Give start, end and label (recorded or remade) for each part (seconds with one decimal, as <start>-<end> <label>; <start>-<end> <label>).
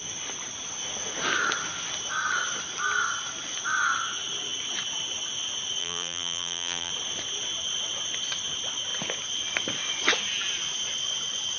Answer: 0.0-5.8 recorded; 5.8-6.9 remade; 6.9-11.6 recorded